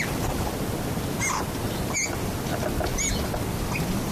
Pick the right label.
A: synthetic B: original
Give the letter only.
B